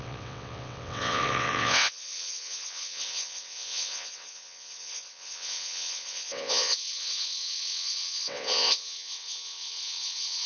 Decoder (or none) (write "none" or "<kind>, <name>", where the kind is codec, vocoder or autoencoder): vocoder, WaveNeXt